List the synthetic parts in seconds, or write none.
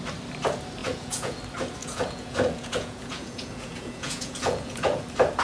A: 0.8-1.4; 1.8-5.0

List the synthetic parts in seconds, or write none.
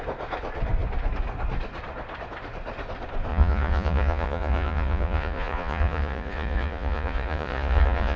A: 3.3-8.2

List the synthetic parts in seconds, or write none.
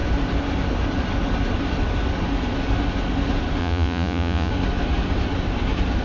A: 3.6-4.5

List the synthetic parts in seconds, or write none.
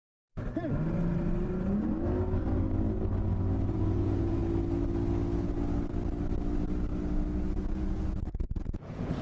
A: 3.7-4.4; 7.6-9.2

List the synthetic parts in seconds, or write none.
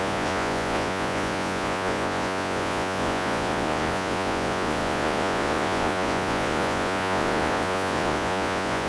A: 0.0-8.9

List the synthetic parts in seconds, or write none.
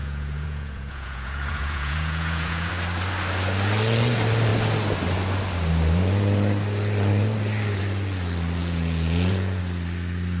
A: 0.0-2.7; 8.6-9.6